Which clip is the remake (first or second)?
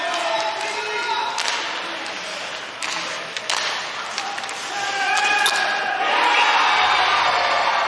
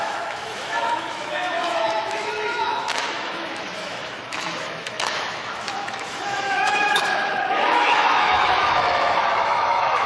second